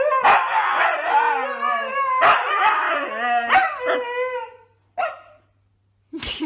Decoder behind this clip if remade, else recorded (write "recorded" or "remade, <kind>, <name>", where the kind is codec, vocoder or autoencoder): recorded